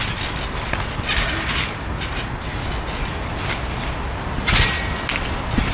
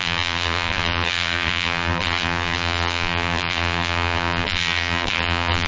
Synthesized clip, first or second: second